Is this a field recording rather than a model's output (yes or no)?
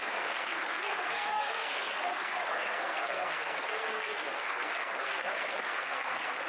no